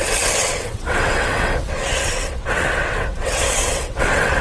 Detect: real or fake fake